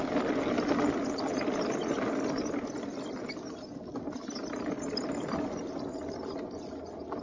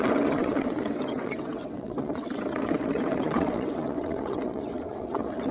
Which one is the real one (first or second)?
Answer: first